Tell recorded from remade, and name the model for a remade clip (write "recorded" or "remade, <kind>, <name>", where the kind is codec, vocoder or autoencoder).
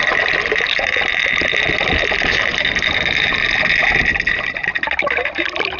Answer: recorded